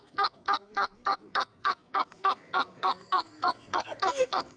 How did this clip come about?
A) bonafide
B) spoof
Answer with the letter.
B